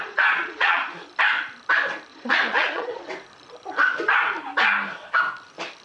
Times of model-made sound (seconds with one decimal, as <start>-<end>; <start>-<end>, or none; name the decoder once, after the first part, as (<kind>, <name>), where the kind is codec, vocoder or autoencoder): 0.0-1.0 (vocoder, Vocos); 2.1-3.1